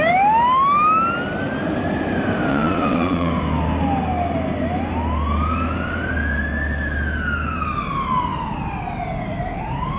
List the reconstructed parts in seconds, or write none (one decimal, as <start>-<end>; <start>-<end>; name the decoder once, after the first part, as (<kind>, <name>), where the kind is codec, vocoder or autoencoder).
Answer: 2.5-3.3 (vocoder, Vocos)